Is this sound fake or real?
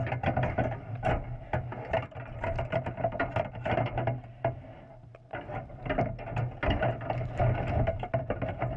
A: real